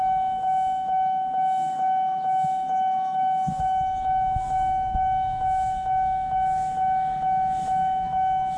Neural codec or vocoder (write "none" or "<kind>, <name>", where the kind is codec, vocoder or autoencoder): autoencoder, DAC-VAE